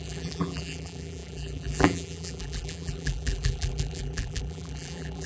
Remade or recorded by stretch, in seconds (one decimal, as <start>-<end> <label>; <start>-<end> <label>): 0.0-5.3 remade